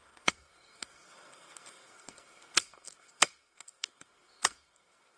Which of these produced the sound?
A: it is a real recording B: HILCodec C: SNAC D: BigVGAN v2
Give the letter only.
C